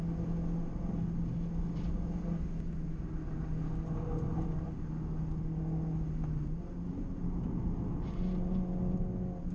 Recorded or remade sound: recorded